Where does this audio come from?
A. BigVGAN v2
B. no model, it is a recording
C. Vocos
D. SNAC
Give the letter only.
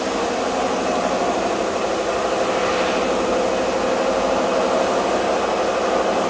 B